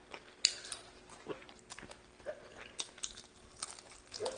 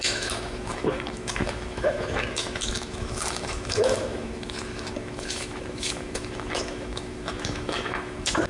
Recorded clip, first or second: first